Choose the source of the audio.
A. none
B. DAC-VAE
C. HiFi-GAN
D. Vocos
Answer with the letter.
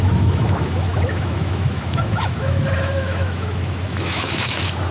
B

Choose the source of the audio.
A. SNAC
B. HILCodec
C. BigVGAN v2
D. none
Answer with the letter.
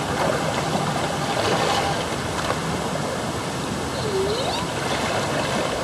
D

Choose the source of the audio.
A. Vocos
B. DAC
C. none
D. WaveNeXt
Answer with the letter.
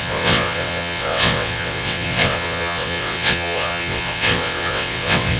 D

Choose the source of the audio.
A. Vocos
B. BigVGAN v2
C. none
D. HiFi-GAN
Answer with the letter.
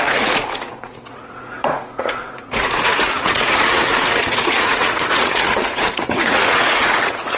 A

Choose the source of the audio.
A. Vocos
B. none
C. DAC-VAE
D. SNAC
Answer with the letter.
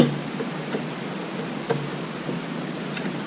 B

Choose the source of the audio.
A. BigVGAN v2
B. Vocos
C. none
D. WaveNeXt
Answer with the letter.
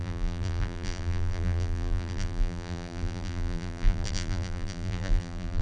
A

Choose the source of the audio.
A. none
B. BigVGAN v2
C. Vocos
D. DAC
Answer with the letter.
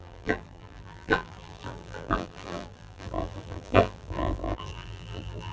B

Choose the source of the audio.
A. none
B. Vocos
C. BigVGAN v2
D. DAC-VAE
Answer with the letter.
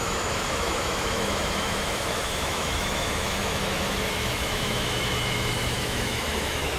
D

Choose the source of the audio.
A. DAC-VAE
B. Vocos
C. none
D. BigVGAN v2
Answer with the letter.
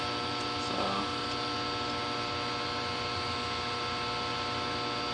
C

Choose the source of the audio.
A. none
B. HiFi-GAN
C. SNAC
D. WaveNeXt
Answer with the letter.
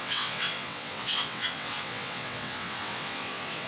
D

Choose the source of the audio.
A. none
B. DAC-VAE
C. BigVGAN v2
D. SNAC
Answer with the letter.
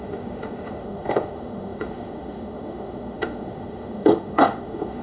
B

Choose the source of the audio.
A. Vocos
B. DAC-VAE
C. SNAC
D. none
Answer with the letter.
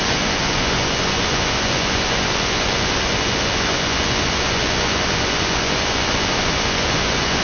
A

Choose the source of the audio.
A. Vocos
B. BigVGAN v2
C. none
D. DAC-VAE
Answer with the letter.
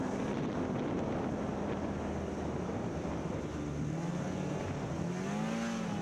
C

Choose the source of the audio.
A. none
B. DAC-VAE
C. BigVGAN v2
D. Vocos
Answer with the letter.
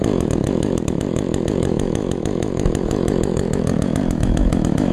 B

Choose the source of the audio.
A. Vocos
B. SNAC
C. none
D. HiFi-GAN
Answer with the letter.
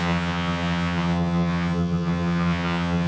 D